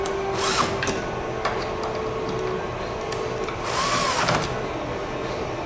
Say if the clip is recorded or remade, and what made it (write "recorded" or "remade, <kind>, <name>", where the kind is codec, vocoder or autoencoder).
recorded